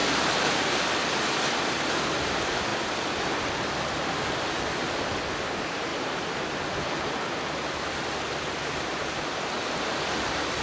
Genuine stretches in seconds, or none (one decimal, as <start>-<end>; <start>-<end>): 0.0-5.9; 10.1-10.6